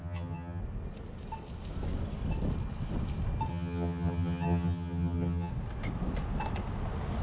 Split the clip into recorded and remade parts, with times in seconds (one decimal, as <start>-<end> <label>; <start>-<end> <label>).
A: 0.0-0.6 remade; 0.6-3.5 recorded; 3.5-5.5 remade; 5.5-7.2 recorded